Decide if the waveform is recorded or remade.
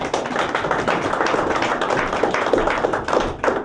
recorded